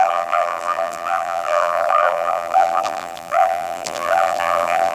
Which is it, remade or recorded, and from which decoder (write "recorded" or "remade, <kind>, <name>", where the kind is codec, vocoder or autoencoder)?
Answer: remade, vocoder, BigVGAN v2